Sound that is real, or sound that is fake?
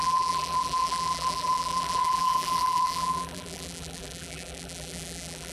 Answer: fake